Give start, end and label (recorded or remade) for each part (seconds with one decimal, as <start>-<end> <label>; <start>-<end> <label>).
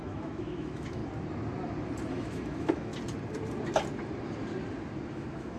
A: 0.0-1.0 remade; 1.0-2.1 recorded; 2.1-2.9 remade; 2.9-5.1 recorded; 5.1-5.6 remade